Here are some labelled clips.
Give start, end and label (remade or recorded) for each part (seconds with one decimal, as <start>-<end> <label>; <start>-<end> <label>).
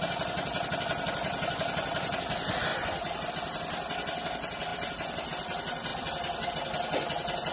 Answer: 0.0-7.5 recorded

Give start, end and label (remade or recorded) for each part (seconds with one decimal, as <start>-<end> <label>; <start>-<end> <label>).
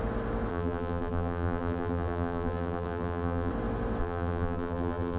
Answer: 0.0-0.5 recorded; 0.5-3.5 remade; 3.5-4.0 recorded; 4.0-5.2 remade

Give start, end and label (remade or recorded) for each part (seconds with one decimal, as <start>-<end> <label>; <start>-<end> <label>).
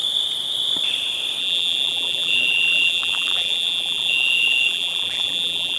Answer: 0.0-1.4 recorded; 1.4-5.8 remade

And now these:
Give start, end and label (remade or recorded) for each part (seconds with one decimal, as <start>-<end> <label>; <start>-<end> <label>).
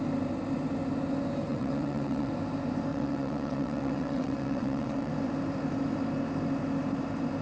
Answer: 0.0-1.5 recorded; 1.5-2.3 remade; 2.3-2.9 recorded; 2.9-5.1 remade; 5.1-7.4 recorded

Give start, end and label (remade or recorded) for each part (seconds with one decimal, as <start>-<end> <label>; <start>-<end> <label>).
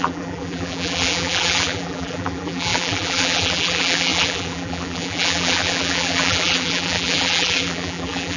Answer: 0.0-8.4 remade